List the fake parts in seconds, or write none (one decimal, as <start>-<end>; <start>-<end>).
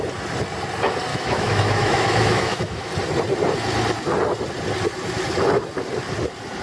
1.1-2.9